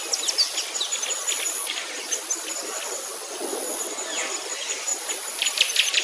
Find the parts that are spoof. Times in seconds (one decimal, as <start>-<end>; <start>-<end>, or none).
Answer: 1.6-2.6; 4.9-6.0